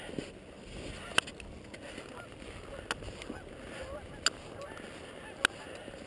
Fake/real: real